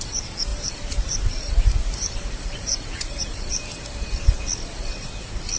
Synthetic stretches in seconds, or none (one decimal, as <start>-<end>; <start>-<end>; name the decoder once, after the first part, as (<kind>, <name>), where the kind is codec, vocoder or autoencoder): 0.0-3.6 (vocoder, BigVGAN v2)